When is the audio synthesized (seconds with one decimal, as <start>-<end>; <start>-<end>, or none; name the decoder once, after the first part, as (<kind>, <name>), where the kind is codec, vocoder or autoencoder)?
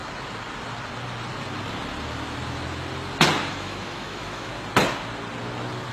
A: 3.5-4.5 (autoencoder, DAC-VAE)